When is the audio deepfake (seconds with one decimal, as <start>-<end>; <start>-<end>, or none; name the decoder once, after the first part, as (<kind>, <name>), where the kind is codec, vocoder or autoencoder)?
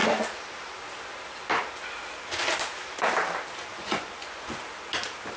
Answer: 3.7-4.6 (vocoder, Vocos)